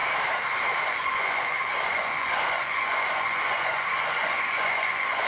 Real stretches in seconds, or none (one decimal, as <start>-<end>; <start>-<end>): 0.0-0.9